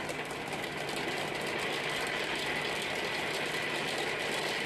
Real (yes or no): yes